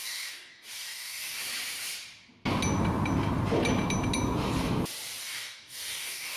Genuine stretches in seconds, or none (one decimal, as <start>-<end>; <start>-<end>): 1.4-5.2